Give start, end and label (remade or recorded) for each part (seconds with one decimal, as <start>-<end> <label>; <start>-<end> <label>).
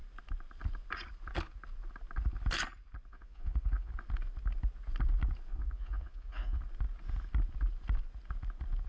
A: 0.0-3.1 recorded; 3.1-3.9 remade; 3.9-5.5 recorded; 5.5-6.6 remade; 6.6-8.9 recorded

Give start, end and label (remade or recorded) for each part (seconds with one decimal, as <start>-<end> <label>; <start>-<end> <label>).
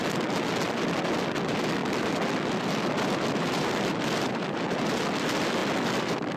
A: 0.0-6.4 recorded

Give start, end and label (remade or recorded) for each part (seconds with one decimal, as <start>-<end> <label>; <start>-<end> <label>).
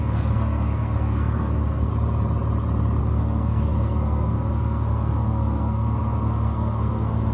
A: 0.0-1.9 remade; 1.9-3.0 recorded; 3.0-7.3 remade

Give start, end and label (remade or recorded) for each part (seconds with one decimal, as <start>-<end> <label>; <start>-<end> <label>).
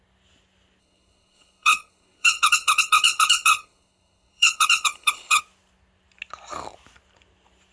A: 0.0-0.8 recorded; 0.8-5.4 remade; 5.4-7.7 recorded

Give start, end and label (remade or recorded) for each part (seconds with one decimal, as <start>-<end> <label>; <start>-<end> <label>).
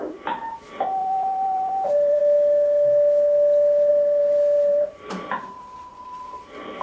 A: 0.0-1.0 recorded; 1.0-2.2 remade; 2.2-3.9 recorded; 3.9-6.8 remade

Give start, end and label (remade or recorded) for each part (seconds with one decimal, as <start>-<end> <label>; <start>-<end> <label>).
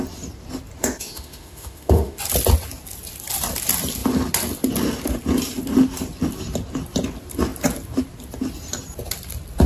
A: 0.0-0.8 recorded; 0.8-2.2 remade; 2.2-9.7 recorded